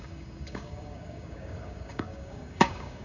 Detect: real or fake fake